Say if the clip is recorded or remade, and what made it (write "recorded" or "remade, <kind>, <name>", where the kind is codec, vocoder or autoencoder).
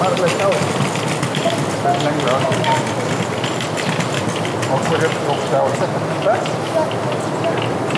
recorded